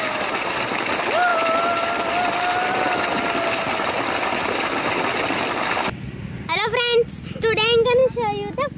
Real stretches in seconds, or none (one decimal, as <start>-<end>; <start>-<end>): 0.0-8.8